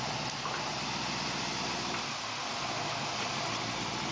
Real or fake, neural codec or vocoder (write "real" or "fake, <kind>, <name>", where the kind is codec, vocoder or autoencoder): real